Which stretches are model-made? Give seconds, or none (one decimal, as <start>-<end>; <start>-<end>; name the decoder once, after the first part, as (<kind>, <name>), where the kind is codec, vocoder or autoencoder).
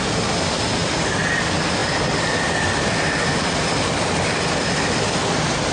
none